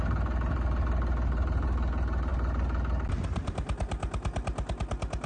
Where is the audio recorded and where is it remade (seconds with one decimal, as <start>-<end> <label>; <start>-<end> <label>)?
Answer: 0.0-5.3 recorded